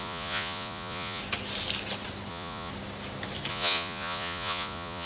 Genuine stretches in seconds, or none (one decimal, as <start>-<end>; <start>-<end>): 1.2-2.3; 2.7-3.5